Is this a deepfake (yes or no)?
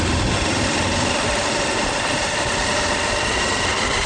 no